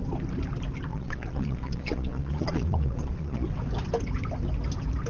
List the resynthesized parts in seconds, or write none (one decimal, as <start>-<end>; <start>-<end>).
0.9-3.5